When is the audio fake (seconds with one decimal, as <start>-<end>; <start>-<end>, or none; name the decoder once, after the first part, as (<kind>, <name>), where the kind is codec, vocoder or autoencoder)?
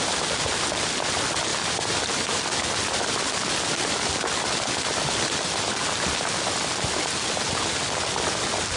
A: none